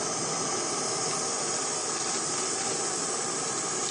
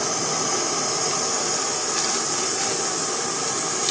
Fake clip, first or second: first